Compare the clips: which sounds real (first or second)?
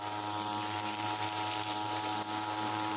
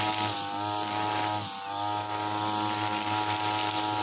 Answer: second